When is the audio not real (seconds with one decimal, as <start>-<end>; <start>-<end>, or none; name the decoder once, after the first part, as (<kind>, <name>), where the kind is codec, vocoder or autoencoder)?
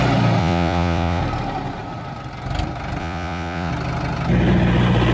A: 0.4-1.2 (vocoder, Vocos); 3.0-3.7